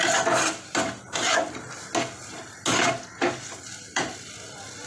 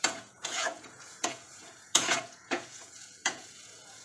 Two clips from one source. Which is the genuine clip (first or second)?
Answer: first